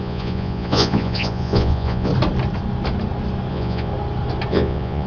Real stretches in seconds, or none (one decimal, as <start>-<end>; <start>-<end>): 2.1-3.5; 3.9-4.5